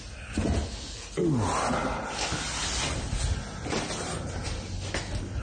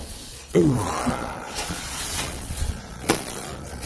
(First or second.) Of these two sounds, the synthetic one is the second